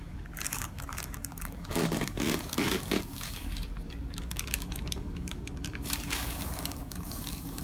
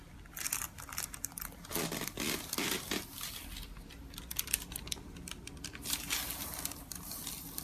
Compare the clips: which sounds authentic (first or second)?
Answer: second